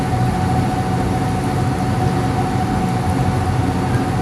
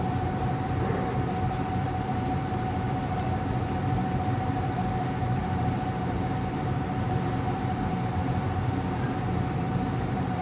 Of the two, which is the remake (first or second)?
second